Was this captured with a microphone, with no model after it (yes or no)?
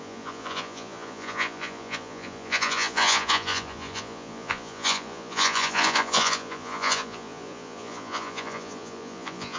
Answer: no